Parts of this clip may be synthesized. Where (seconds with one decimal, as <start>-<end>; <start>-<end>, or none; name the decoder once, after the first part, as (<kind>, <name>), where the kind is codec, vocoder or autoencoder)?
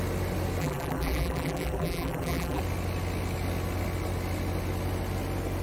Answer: 0.6-2.6 (vocoder, BigVGAN v2)